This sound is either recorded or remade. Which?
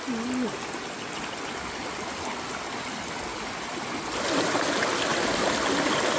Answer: recorded